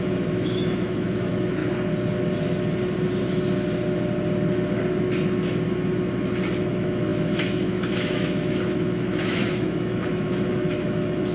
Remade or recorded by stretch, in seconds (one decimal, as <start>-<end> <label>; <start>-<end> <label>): 0.0-1.6 remade; 1.6-6.5 recorded; 6.5-11.3 remade